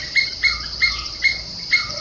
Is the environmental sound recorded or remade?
remade